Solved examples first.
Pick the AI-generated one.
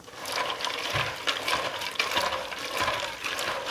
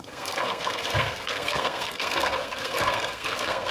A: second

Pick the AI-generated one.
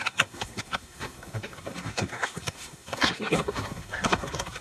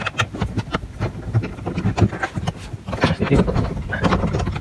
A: first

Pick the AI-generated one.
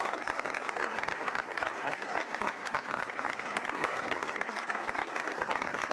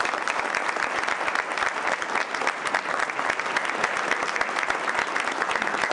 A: first